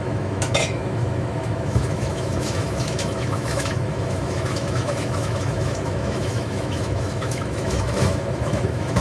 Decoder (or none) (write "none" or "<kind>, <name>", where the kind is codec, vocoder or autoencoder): autoencoder, DAC-VAE